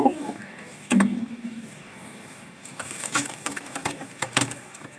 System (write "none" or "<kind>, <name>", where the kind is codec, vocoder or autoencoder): codec, DAC